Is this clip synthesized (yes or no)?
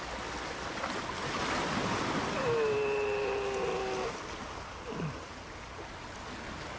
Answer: no